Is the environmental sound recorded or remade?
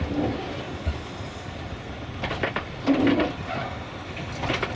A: recorded